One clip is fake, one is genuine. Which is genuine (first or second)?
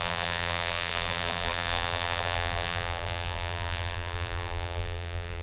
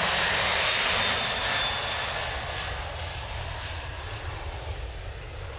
second